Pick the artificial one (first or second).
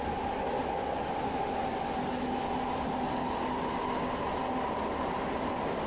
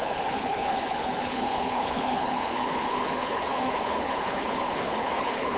second